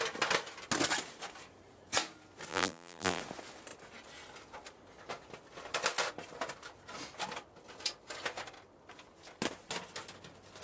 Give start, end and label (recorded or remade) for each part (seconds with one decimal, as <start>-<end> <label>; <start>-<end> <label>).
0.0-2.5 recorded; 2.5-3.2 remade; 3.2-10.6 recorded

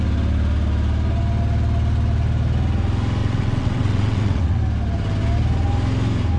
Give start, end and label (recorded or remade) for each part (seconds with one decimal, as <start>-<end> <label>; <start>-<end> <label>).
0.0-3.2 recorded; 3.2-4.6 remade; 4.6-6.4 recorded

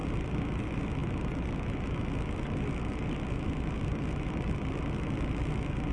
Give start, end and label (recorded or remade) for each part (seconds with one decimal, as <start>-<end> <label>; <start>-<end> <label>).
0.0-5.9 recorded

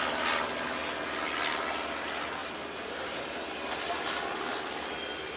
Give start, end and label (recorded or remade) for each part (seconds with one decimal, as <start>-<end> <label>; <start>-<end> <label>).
0.0-2.4 recorded; 2.4-4.2 remade; 4.2-5.4 recorded